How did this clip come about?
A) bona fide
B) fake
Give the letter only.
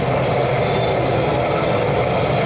A